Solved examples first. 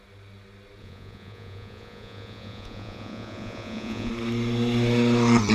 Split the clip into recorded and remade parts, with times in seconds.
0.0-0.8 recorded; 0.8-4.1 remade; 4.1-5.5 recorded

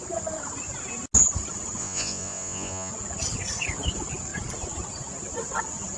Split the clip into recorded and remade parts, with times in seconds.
0.0-1.8 recorded; 1.8-2.9 remade; 2.9-6.0 recorded

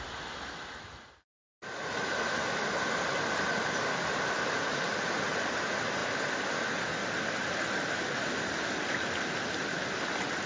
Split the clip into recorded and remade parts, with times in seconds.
0.0-10.5 recorded

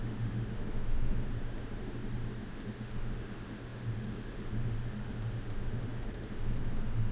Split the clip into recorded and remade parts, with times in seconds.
0.0-1.3 remade; 1.3-2.5 recorded; 2.5-7.1 remade

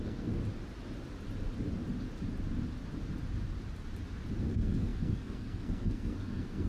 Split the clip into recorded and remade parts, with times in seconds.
0.0-0.4 remade; 0.4-4.4 recorded; 4.4-6.7 remade